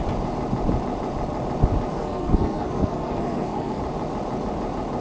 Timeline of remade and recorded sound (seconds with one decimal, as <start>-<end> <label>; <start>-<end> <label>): 0.0-1.9 recorded; 1.9-3.8 remade; 3.8-5.0 recorded